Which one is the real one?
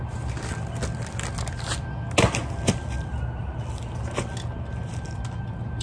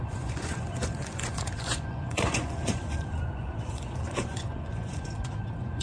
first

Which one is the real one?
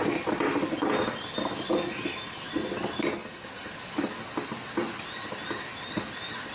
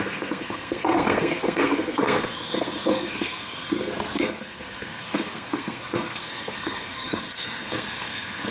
first